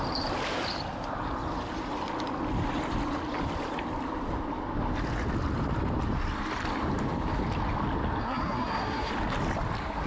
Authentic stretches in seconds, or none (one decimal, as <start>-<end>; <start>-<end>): 0.0-8.2; 9.1-10.1